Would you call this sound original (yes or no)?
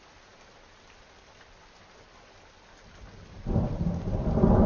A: yes